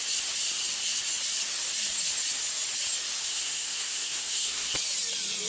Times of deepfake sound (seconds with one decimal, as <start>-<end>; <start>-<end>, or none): 3.2-4.7